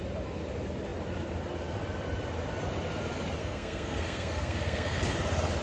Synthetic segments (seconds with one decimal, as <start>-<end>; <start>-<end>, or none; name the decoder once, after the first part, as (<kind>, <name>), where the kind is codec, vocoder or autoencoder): 3.4-5.0 (codec, SNAC)